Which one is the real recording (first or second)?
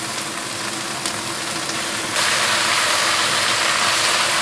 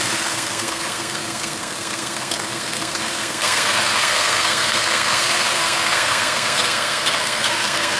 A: first